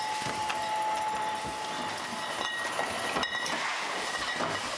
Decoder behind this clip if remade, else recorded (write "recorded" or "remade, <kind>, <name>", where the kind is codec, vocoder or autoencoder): recorded